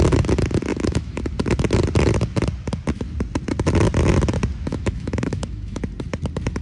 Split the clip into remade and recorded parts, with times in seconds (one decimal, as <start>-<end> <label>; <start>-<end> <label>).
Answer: 0.0-0.7 recorded; 0.7-1.2 remade; 1.2-4.7 recorded; 4.7-5.8 remade; 5.8-6.6 recorded